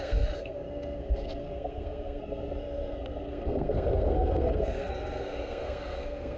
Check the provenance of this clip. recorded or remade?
remade